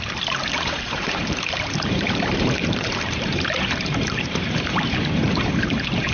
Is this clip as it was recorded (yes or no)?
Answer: no